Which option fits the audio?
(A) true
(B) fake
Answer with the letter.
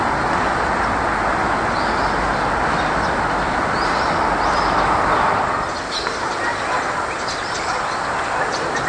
A